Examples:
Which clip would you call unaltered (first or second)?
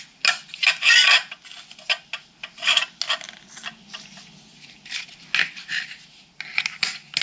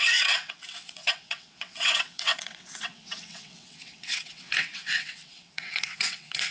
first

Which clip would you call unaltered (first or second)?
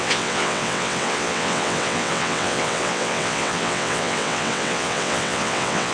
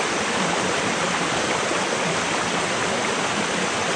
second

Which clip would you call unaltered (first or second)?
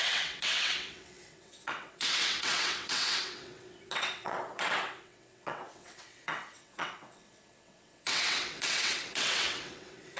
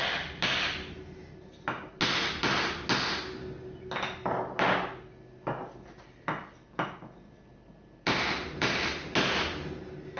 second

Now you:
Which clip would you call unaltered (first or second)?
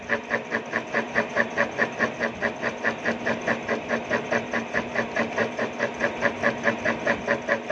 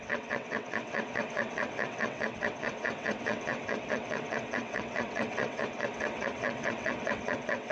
first